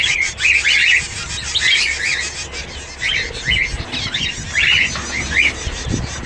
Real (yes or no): yes